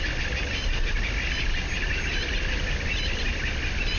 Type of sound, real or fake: real